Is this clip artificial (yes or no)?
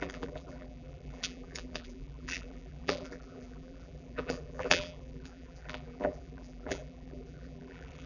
yes